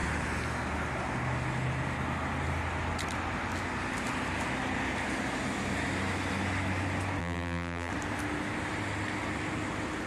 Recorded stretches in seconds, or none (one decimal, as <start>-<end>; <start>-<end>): 0.0-7.2; 7.9-10.1